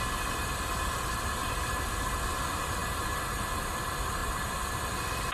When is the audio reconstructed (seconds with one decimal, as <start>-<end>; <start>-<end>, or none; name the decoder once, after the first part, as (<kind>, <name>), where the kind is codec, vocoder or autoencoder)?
1.4-1.9 (vocoder, BigVGAN v2); 2.8-3.5